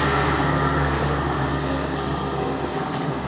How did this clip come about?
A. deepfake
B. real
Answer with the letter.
A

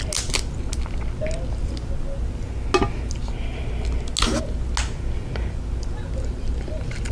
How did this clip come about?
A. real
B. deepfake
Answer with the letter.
A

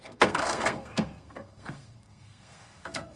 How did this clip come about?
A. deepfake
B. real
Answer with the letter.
A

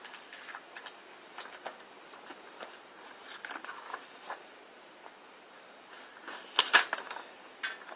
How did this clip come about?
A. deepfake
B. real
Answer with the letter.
A